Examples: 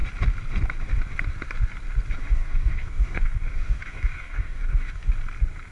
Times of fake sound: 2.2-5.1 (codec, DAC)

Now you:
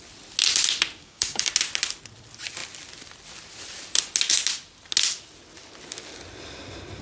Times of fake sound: 1.0-1.5 (codec, DAC)

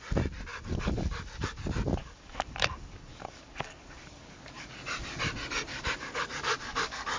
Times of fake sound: 0.5-1.6 (codec, DAC); 2.0-4.7; 5.7-7.2

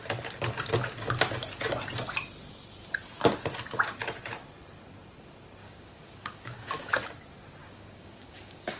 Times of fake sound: 5.6-6.9 (codec, DAC); 7.6-8.8

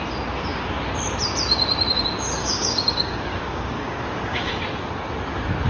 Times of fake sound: 2.4-4.5 (codec, DAC)

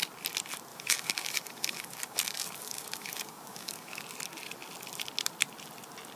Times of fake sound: 0.7-4.0 (codec, DAC)

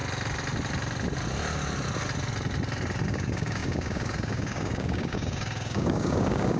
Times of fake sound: 3.1-6.6 (codec, DAC)

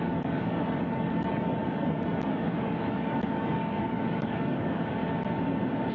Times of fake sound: 0.0-5.0 (codec, DAC)